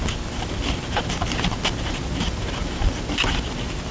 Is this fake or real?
real